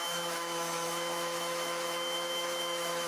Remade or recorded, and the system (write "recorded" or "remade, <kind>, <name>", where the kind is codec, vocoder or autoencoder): remade, autoencoder, DAC-VAE